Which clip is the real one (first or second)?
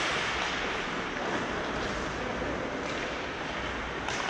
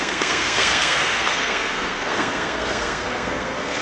first